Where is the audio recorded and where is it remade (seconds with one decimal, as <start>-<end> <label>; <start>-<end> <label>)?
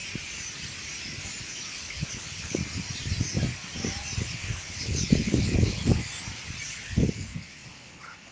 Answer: 0.0-1.7 recorded; 1.7-2.6 remade; 2.6-4.2 recorded; 4.2-6.0 remade; 6.0-6.7 recorded; 6.7-8.3 remade